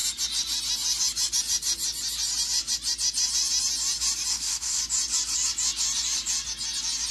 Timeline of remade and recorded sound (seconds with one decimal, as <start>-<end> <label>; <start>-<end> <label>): 0.0-4.3 recorded; 4.3-4.8 remade; 4.8-7.1 recorded